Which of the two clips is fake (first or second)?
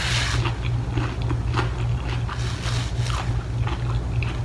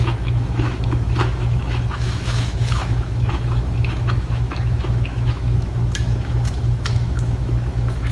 second